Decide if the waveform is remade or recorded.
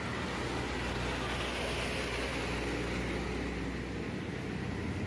recorded